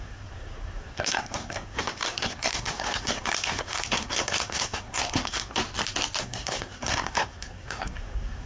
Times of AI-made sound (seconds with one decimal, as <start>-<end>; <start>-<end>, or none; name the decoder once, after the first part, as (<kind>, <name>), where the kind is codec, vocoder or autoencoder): 0.0-5.6 (codec, SNAC); 6.2-8.5